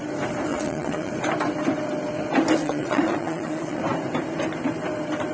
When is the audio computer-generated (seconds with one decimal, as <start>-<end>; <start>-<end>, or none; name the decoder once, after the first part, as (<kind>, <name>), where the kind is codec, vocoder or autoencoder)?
0.5-1.1 (vocoder, Vocos); 2.6-3.8